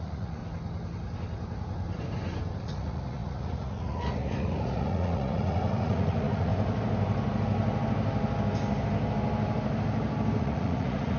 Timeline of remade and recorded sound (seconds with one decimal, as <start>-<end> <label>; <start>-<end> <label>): 0.0-0.4 remade; 0.4-2.6 recorded; 2.6-6.5 remade; 6.5-10.4 recorded; 10.4-11.2 remade